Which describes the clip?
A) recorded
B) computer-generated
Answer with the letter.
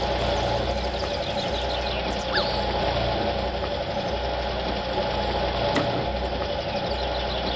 A